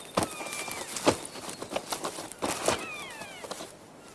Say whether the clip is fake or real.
real